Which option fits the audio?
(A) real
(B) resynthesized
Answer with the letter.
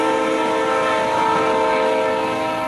A